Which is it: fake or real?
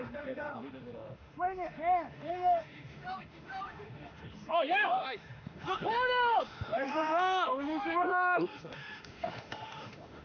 fake